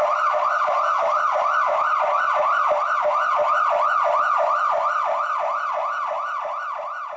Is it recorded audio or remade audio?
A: recorded